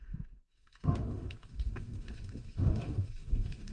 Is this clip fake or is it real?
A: fake